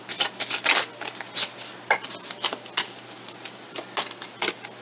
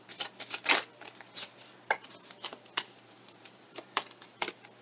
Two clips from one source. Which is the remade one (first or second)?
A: second